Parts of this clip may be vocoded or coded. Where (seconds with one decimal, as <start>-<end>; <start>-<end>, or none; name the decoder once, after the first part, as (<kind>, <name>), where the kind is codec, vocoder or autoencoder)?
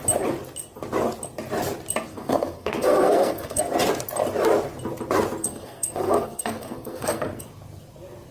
2.1-3.6 (codec, SNAC); 5.4-7.4